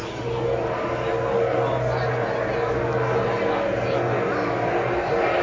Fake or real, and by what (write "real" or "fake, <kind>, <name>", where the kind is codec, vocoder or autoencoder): real